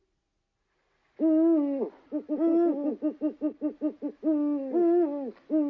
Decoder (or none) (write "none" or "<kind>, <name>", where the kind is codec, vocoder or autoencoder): none